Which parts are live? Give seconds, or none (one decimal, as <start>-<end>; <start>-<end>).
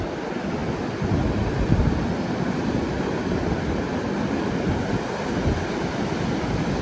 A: 0.0-6.8